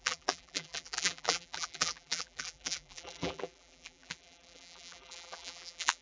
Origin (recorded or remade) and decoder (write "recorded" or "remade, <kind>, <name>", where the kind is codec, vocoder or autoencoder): remade, vocoder, BigVGAN v2